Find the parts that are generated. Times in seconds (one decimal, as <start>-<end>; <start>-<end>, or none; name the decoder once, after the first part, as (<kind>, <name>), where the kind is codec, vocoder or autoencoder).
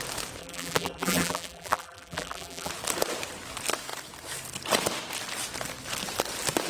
0.4-2.7 (vocoder, BigVGAN v2)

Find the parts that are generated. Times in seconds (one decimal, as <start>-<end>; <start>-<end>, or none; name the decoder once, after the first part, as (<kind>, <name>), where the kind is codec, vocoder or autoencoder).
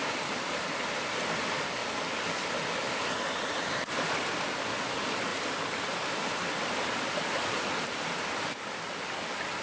none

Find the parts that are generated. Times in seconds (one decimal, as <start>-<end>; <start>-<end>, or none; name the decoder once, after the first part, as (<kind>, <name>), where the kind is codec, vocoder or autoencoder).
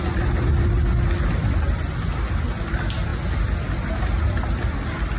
none